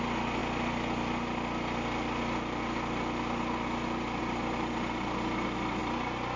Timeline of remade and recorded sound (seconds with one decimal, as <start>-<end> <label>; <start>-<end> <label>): 0.0-6.4 recorded